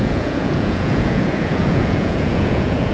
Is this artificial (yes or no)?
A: yes